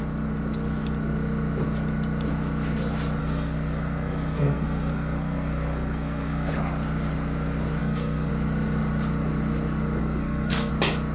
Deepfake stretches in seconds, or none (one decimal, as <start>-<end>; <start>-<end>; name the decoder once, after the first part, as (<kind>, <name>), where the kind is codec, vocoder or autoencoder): 3.2-6.5 (codec, SNAC); 7.8-8.3; 10.0-10.7